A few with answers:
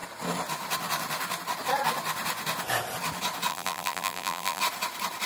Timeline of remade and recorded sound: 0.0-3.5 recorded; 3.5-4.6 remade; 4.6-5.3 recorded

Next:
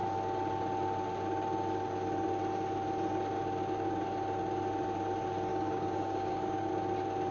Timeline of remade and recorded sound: 0.0-5.5 recorded; 5.5-6.7 remade; 6.7-7.3 recorded

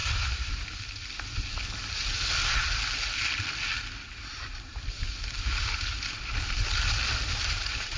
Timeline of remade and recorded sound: 0.0-0.8 remade; 0.8-8.0 recorded

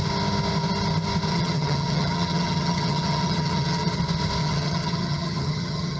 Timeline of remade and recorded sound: 0.0-1.3 recorded; 1.3-4.0 remade; 4.0-4.4 recorded; 4.4-6.0 remade

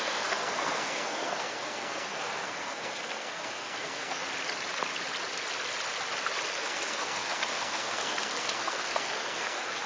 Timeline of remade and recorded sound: 0.0-4.2 remade; 4.2-6.5 recorded; 6.5-9.9 remade